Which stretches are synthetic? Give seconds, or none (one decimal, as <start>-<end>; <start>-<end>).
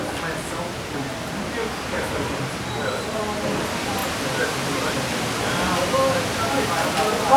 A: none